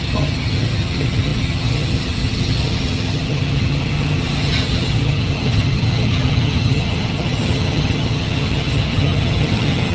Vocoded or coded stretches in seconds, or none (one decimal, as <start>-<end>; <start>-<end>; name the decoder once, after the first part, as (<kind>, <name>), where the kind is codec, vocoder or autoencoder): 0.0-9.9 (vocoder, HiFi-GAN)